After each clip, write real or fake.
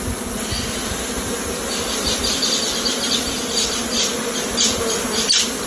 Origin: real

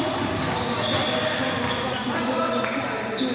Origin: real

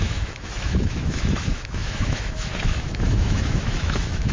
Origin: fake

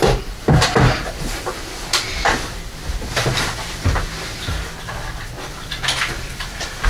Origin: real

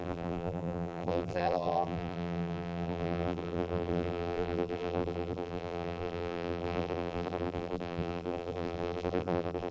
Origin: fake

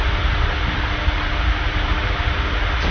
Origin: real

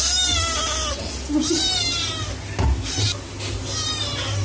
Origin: real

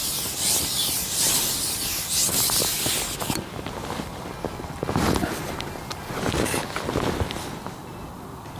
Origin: real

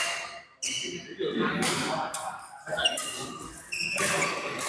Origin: real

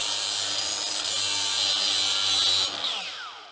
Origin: real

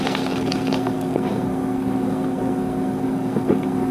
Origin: fake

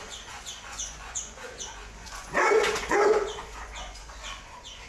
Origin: fake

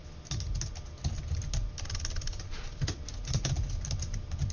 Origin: real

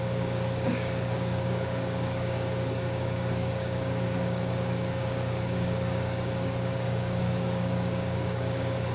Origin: fake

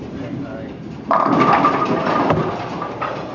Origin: real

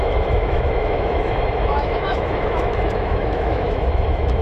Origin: fake